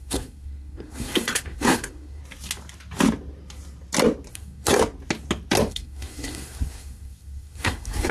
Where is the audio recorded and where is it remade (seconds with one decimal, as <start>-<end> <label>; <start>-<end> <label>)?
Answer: 0.0-2.2 remade; 2.2-4.3 recorded; 4.3-4.8 remade; 4.8-5.7 recorded; 5.7-8.1 remade